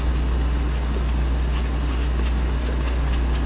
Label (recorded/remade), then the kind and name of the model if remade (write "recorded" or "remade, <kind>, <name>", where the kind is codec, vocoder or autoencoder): recorded